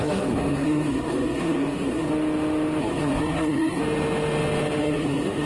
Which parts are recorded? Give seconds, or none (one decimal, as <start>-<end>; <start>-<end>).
2.1-2.8; 3.8-4.8